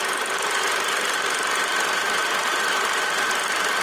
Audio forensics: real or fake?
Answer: fake